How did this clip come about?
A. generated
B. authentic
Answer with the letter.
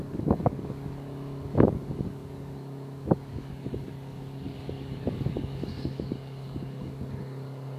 A